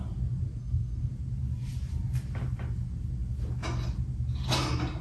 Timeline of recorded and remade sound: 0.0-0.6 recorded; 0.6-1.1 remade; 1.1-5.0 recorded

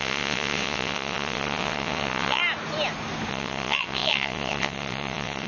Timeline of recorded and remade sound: 0.0-2.4 remade; 2.4-3.3 recorded; 3.3-5.5 remade